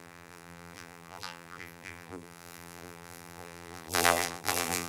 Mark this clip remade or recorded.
remade